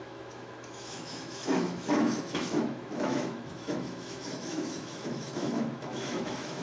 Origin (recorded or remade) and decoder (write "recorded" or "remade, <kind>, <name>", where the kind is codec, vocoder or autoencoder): remade, autoencoder, DAC-VAE